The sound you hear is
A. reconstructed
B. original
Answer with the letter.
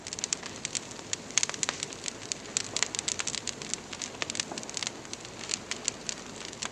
B